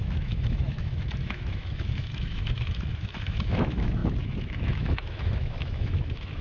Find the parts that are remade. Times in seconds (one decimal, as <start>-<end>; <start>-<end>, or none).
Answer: 0.0-6.4